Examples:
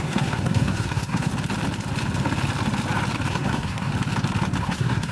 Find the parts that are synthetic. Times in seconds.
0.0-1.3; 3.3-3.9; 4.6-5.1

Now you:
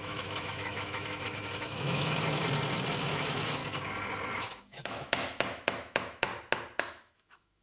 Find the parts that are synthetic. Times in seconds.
0.0-2.4; 3.0-3.6; 4.3-6.3; 6.8-7.6

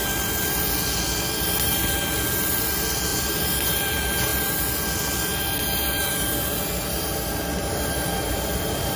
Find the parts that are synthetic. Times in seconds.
3.1-3.7

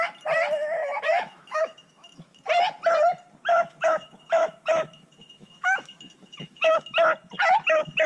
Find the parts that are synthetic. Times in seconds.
0.8-2.4; 3.5-6.9

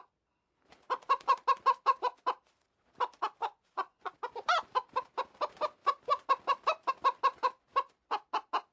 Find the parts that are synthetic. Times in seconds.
3.4-4.1

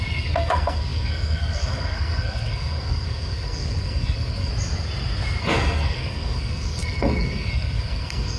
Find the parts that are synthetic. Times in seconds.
0.0-4.5; 5.4-8.4